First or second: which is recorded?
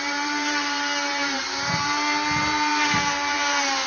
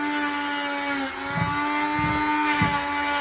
second